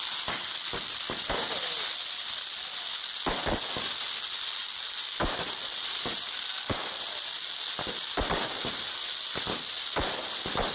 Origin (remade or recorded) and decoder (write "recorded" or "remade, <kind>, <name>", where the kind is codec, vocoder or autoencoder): recorded